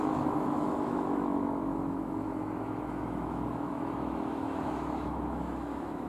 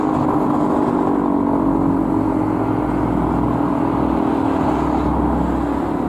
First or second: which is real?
second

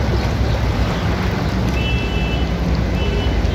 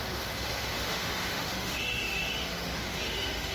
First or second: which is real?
first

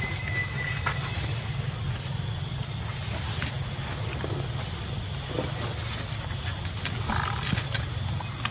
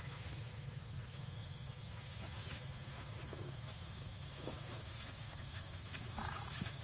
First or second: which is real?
first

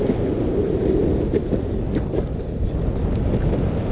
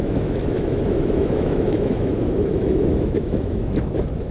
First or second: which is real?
first